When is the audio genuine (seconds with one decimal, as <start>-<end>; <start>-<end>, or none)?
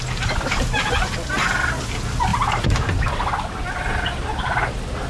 0.0-5.1